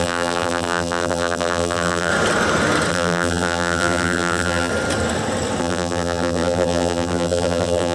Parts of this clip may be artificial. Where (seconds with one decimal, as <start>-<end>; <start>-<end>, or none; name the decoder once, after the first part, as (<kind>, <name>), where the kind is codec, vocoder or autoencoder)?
0.0-2.1 (vocoder, BigVGAN v2); 2.9-4.7; 5.6-7.9